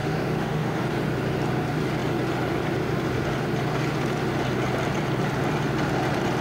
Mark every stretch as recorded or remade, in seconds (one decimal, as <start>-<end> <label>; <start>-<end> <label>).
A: 0.0-0.8 remade; 0.8-6.4 recorded